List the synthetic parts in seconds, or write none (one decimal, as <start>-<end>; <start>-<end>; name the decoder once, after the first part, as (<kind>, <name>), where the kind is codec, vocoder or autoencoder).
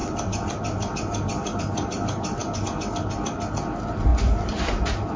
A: none